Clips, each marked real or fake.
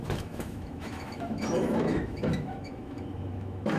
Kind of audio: fake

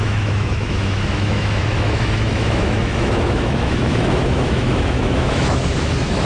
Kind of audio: fake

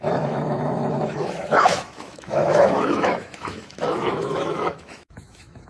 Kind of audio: fake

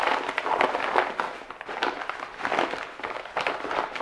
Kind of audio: real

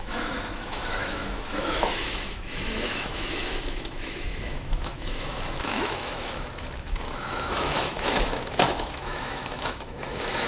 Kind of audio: fake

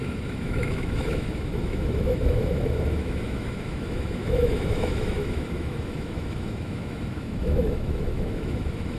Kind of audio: fake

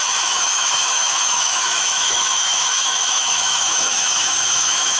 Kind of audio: fake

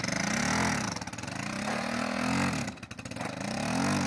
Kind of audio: real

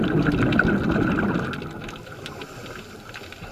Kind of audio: real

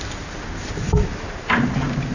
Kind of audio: real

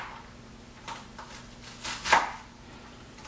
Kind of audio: real